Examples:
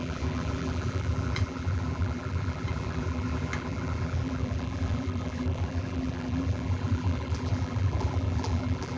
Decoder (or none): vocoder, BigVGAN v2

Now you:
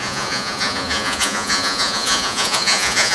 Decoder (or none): vocoder, Vocos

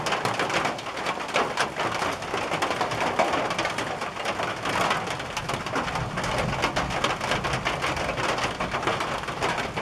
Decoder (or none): none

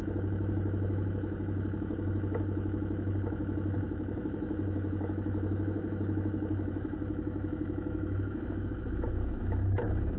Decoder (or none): autoencoder, DAC-VAE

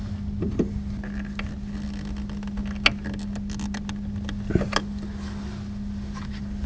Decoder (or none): none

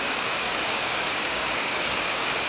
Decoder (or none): codec, DAC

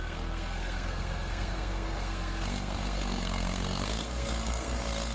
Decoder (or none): codec, SNAC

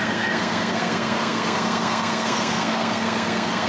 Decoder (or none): codec, SNAC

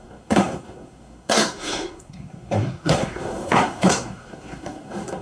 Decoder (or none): codec, SNAC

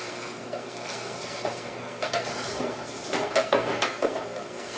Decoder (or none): codec, SNAC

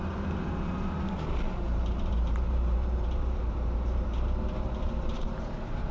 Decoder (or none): vocoder, BigVGAN v2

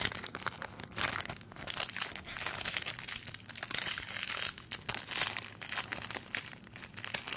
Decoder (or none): none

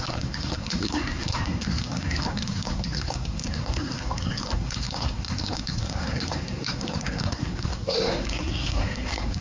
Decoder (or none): codec, SNAC